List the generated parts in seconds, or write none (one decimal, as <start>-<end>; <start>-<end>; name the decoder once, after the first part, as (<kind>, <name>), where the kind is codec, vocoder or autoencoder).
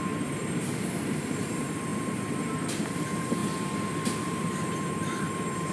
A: 0.0-3.4 (vocoder, BigVGAN v2); 3.9-5.7